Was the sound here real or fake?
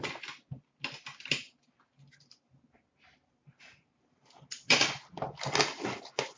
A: real